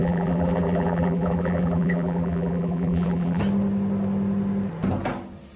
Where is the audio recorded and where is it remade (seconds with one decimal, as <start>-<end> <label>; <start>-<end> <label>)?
0.0-3.4 remade; 3.4-5.6 recorded